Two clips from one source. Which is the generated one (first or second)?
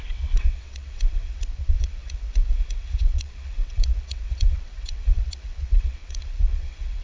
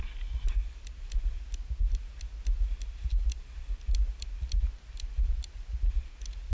first